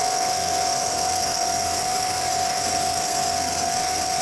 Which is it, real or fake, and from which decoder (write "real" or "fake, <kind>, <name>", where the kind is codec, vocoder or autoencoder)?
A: fake, codec, SNAC